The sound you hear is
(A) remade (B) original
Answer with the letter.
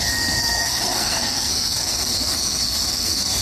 A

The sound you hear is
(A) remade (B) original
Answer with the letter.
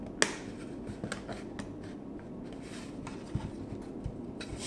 B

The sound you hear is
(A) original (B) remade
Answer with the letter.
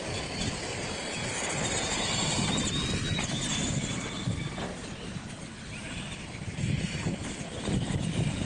A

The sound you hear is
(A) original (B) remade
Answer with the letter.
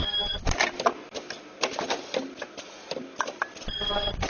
A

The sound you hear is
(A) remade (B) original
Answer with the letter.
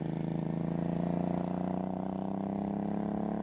B